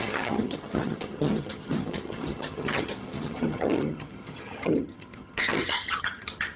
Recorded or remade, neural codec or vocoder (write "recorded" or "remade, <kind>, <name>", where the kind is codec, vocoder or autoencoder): remade, vocoder, HiFi-GAN